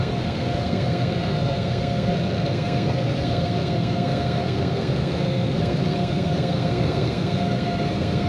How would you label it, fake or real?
fake